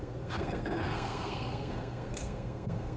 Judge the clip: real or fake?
fake